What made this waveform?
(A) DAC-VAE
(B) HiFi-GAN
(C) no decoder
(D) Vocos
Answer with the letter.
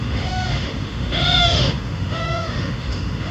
A